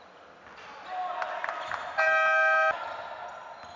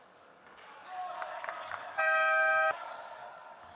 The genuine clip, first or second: first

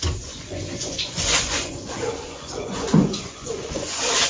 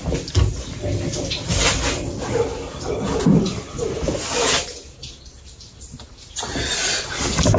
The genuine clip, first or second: second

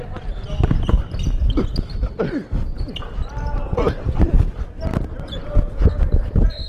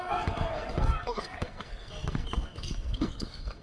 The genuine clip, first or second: first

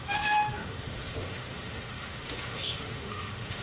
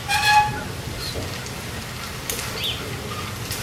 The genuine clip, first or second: second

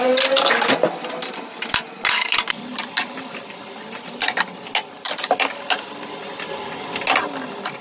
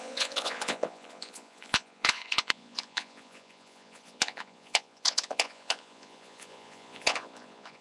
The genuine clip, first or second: first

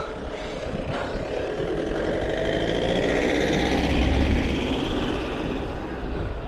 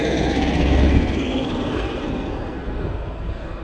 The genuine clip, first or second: first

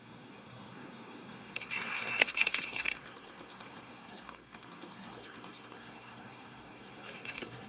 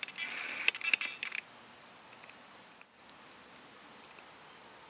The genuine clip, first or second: second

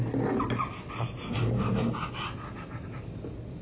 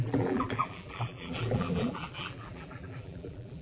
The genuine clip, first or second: first